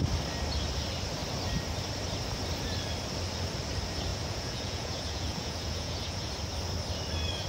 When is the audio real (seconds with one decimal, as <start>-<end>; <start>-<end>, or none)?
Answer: 0.0-4.1; 6.3-7.5